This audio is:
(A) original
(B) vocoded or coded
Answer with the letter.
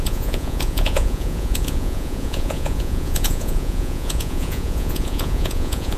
B